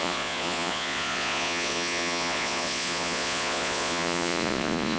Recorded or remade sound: remade